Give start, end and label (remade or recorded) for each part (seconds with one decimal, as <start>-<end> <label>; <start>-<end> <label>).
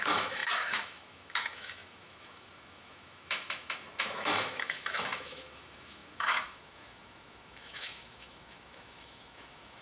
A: 0.0-9.8 remade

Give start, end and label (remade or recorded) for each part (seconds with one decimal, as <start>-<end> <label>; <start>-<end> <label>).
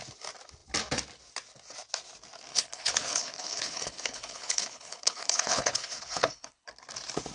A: 0.0-2.5 recorded; 2.5-6.7 remade; 6.7-7.3 recorded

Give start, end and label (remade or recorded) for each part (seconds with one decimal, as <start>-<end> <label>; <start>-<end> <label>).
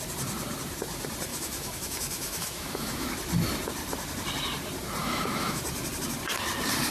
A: 0.0-1.3 recorded; 1.3-3.1 remade; 3.1-5.0 recorded; 5.0-5.6 remade; 5.6-6.9 recorded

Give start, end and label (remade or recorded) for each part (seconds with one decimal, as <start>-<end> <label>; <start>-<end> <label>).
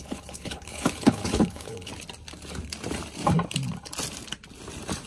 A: 0.0-1.9 remade; 1.9-5.1 recorded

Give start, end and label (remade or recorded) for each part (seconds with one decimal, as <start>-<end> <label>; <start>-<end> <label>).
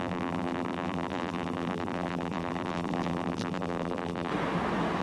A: 0.0-4.3 remade; 4.3-5.0 recorded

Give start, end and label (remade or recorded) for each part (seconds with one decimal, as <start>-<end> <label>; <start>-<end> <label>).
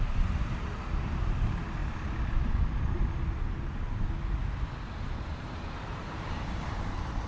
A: 0.0-1.8 remade; 1.8-4.9 recorded; 4.9-7.3 remade